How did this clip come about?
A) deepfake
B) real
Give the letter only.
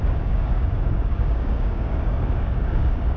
A